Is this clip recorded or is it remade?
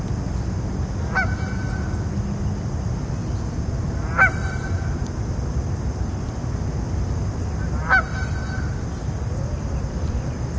recorded